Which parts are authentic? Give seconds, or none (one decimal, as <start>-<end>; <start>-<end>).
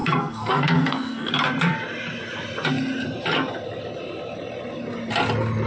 1.3-5.7